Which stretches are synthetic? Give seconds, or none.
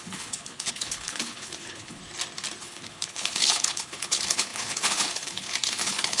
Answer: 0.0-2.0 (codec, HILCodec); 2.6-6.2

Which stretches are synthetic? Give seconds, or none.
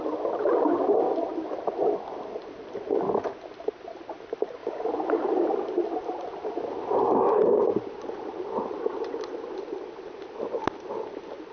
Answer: none